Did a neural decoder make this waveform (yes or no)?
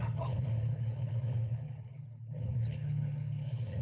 yes